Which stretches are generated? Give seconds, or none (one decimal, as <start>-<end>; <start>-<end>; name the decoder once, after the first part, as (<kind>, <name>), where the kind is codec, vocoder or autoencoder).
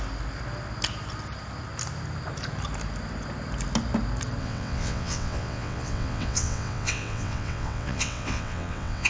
4.4-9.1 (vocoder, WaveNeXt)